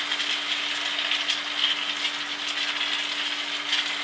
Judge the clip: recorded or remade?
recorded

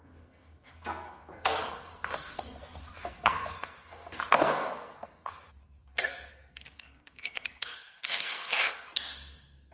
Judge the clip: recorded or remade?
remade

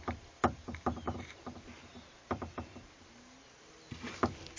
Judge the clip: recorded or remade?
recorded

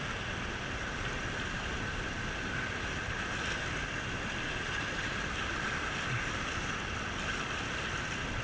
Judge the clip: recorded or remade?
recorded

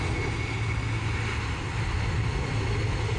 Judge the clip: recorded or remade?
recorded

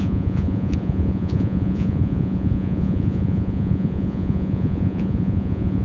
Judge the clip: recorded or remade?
remade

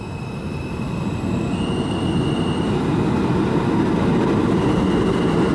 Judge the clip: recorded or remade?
recorded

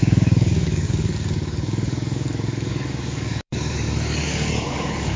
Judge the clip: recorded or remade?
remade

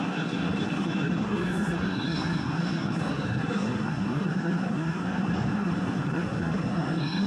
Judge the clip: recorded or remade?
remade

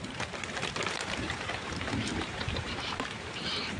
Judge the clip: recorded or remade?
remade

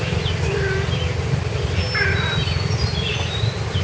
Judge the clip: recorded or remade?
recorded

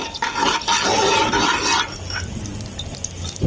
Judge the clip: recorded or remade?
recorded